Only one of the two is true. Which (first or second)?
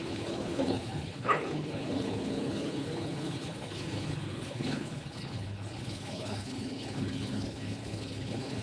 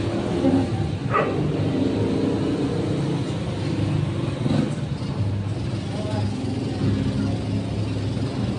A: second